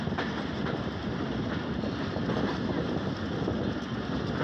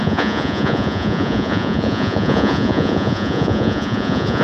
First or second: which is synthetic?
second